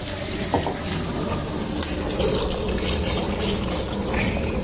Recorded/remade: recorded